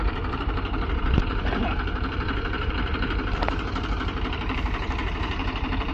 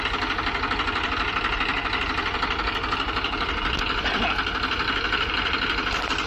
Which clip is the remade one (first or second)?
first